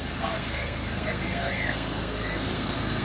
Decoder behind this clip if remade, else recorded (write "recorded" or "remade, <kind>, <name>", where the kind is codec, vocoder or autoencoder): remade, codec, SNAC